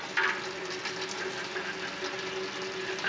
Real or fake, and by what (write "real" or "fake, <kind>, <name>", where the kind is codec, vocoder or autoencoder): real